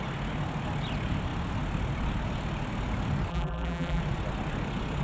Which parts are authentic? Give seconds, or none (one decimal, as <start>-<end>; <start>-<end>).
0.0-3.3; 4.0-5.0